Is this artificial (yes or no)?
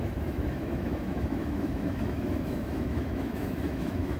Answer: yes